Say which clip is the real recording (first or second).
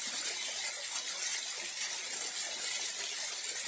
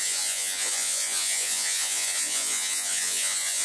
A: first